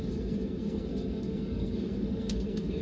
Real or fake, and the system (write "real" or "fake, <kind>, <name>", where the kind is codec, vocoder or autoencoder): fake, codec, SNAC